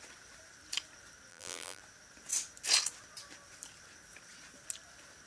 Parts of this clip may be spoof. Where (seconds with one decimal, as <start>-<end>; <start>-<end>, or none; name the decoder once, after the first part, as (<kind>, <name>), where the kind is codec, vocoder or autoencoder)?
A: 1.3-1.8 (vocoder, BigVGAN v2)

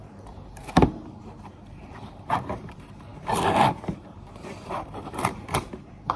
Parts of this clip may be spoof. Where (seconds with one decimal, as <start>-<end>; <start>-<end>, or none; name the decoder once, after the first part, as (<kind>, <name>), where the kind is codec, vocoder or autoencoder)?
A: 0.0-6.2 (vocoder, BigVGAN v2)

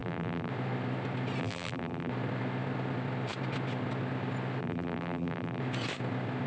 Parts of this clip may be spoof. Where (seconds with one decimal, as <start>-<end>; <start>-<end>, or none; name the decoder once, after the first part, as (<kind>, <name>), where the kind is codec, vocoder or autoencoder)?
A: 0.0-0.5 (vocoder, BigVGAN v2); 1.4-2.1; 4.6-5.6